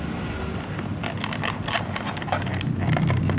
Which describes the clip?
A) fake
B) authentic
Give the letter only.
B